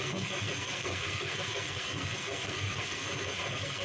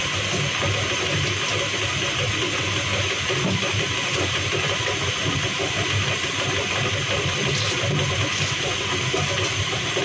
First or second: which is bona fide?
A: second